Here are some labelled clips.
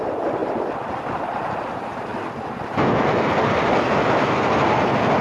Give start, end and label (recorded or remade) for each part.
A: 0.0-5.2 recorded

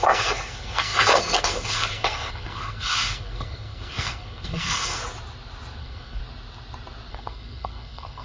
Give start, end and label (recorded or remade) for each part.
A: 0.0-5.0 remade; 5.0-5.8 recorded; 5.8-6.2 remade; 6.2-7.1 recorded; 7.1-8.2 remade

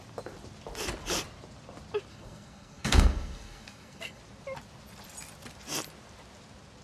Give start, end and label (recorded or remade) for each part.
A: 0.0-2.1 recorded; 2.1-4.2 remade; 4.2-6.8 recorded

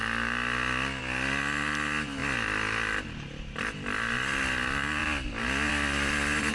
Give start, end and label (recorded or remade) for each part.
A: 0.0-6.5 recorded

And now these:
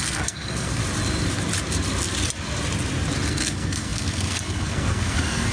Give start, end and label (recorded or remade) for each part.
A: 0.0-0.8 remade; 0.8-3.3 recorded; 3.3-5.5 remade